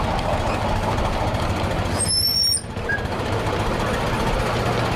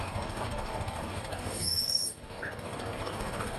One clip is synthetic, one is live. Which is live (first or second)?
first